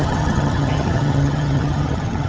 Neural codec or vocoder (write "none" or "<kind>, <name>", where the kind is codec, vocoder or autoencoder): vocoder, HiFi-GAN